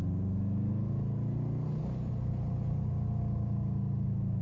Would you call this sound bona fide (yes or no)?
yes